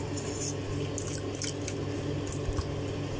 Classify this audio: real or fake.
real